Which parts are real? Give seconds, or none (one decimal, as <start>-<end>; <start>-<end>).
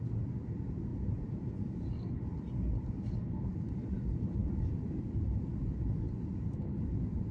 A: 0.0-0.9; 2.0-4.4; 5.0-7.3